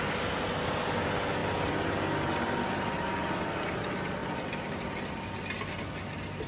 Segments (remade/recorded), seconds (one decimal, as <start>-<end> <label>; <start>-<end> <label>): 0.0-4.2 recorded; 4.2-5.1 remade; 5.1-6.5 recorded